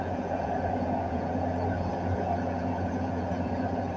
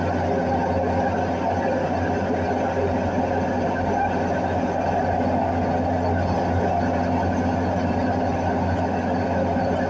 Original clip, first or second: second